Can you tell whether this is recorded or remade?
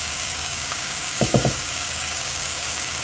remade